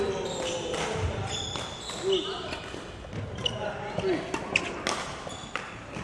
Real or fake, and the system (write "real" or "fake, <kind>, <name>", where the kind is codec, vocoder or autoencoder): real